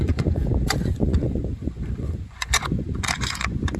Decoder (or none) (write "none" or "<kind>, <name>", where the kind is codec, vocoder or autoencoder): vocoder, Vocos